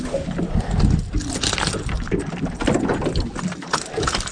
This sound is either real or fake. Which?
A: real